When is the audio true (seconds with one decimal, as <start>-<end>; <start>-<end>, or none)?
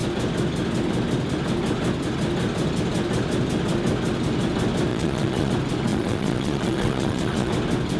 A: 0.0-4.9; 5.5-5.9; 7.5-8.0